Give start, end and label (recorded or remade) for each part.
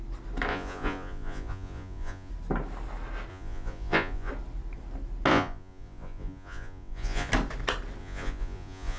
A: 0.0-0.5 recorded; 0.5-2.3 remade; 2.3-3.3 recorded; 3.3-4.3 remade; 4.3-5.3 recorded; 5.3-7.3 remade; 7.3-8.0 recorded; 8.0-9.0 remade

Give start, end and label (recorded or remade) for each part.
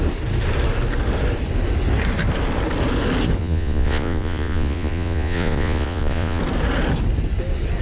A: 0.0-3.4 recorded; 3.4-6.4 remade; 6.4-7.8 recorded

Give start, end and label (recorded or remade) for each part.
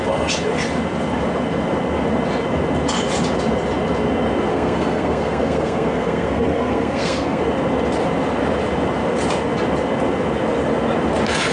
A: 0.0-4.5 recorded; 4.5-7.4 remade; 7.4-11.5 recorded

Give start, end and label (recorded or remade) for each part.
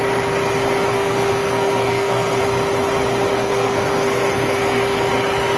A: 0.0-0.9 recorded; 0.9-2.4 remade; 2.4-3.3 recorded; 3.3-5.1 remade; 5.1-5.6 recorded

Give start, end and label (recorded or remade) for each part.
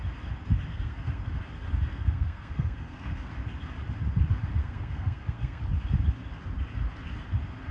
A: 0.0-0.7 recorded; 0.7-1.2 remade; 1.2-1.9 recorded; 1.9-3.3 remade; 3.3-4.6 recorded; 4.6-5.6 remade; 5.6-7.7 recorded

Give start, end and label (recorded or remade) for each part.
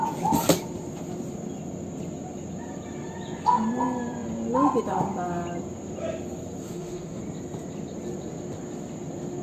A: 0.0-6.6 recorded; 6.6-7.2 remade; 7.2-9.4 recorded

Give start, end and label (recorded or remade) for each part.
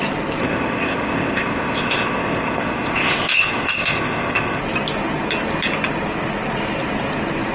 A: 0.0-0.4 recorded; 0.4-4.6 remade; 4.6-7.5 recorded